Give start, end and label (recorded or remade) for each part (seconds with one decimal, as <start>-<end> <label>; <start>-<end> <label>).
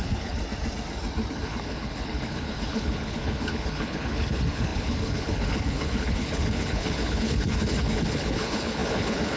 0.0-0.4 remade; 0.4-1.3 recorded; 1.3-9.4 remade